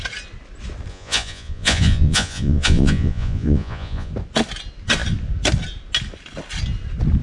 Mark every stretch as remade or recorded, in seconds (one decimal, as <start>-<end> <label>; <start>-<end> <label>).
0.0-0.9 recorded; 0.9-4.1 remade; 4.1-7.2 recorded